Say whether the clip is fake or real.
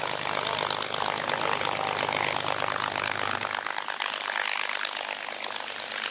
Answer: real